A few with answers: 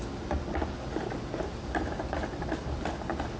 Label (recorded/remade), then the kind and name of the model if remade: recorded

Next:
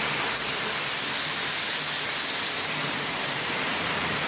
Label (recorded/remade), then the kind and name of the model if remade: recorded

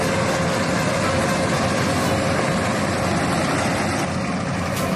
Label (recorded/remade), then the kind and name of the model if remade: recorded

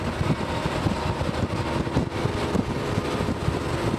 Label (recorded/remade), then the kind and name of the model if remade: recorded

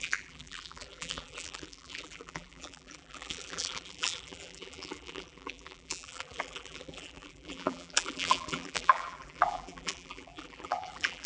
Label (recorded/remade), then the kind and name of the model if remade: remade, vocoder, BigVGAN v2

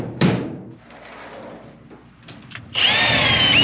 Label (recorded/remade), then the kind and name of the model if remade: recorded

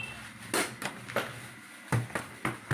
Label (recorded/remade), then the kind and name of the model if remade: recorded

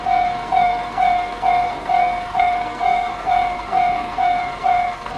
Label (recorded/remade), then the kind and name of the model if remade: remade, codec, SNAC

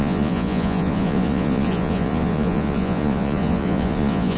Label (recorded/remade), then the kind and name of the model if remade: remade, vocoder, Vocos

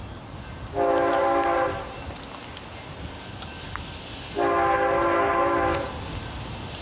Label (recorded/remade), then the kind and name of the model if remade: recorded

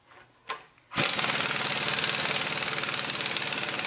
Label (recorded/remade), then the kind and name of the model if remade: recorded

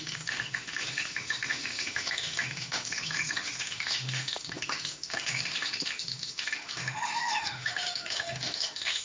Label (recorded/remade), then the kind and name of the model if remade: remade, autoencoder, DAC-VAE